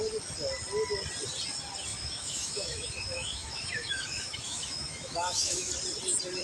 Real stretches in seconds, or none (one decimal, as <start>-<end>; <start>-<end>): 0.0-1.9; 5.7-6.4